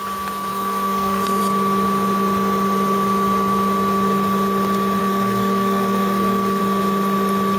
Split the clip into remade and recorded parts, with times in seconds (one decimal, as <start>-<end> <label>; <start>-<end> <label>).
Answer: 0.0-0.5 recorded; 0.5-1.4 remade; 1.4-5.0 recorded; 5.0-6.6 remade; 6.6-7.6 recorded